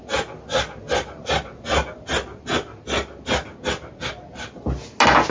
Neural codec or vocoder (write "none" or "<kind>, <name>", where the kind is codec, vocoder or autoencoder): none